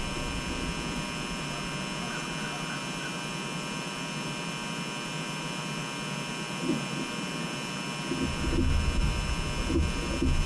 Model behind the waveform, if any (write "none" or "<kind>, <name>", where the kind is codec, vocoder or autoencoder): none